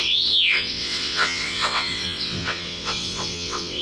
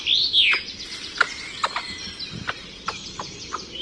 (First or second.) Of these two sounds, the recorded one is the second